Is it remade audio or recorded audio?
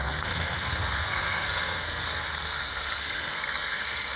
remade